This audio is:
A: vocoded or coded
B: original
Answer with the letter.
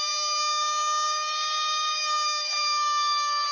A